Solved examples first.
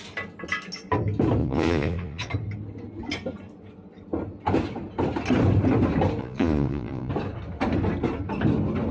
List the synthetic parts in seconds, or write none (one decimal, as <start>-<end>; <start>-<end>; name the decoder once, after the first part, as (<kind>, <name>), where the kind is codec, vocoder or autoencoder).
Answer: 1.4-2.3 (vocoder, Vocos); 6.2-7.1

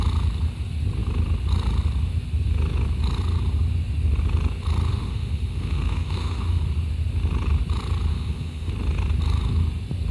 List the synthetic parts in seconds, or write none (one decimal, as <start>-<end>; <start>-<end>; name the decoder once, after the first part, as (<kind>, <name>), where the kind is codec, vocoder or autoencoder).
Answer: 4.9-6.6 (autoencoder, DAC-VAE); 8.1-8.7

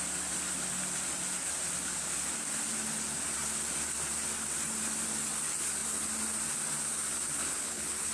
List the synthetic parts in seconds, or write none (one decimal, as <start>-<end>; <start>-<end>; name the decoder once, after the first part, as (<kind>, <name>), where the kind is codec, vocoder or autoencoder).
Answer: 7.4-8.1 (codec, HILCodec)

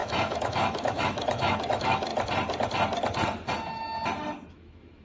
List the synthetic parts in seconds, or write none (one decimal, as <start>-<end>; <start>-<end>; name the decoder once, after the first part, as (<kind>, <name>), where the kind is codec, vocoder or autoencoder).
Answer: 0.0-2.1 (autoencoder, DAC-VAE); 4.5-5.0

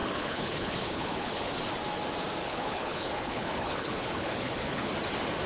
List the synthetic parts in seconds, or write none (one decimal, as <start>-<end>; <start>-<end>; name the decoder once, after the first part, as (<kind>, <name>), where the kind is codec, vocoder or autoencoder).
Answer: 0.0-1.5 (codec, HILCodec); 2.4-4.9

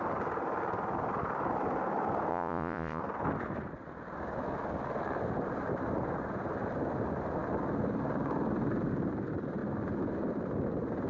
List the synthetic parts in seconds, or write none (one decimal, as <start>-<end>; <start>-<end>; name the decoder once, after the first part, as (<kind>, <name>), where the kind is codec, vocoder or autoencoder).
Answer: 2.3-3.0 (vocoder, Vocos)

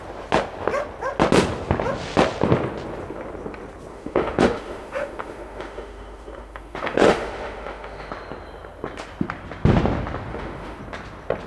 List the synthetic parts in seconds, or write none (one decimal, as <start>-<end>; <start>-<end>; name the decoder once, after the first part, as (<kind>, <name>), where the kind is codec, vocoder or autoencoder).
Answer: 3.9-8.1 (autoencoder, DAC-VAE); 10.3-10.8

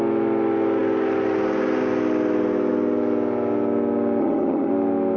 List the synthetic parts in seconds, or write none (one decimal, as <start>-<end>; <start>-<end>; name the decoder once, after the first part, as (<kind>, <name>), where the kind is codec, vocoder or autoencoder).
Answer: 4.2-4.7 (vocoder, HiFi-GAN)